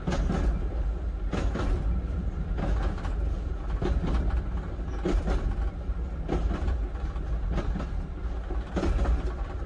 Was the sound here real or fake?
real